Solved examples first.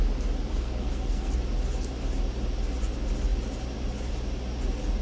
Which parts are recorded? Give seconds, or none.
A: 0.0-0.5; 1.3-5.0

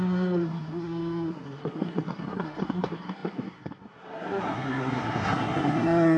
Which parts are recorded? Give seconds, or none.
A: none

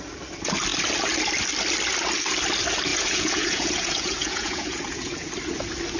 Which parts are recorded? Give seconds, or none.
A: 0.0-2.9; 5.3-6.0

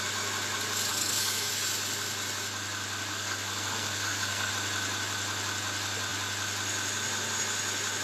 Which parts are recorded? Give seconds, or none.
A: 0.0-0.9; 1.5-3.1; 4.5-8.0

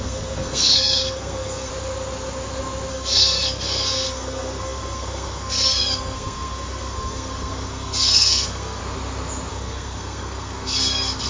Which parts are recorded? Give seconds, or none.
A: 1.7-2.9; 8.8-9.5

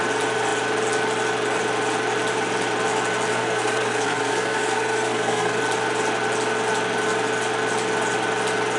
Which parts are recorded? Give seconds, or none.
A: 0.0-3.3; 5.6-8.8